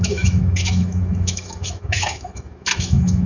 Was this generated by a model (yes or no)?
yes